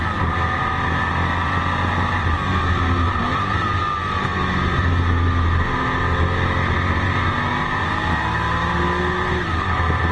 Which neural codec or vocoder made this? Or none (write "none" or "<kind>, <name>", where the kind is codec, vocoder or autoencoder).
none